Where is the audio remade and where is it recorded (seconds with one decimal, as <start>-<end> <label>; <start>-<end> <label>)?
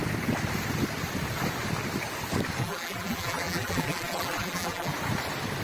0.0-2.6 recorded; 2.6-4.9 remade; 4.9-5.6 recorded